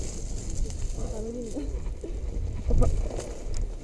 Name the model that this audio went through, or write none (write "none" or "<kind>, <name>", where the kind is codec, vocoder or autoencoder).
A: none